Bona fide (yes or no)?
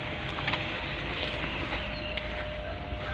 yes